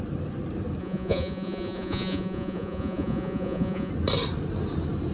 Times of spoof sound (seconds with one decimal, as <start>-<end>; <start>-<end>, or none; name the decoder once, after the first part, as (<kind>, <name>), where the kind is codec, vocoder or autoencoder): 0.8-3.9 (vocoder, Vocos)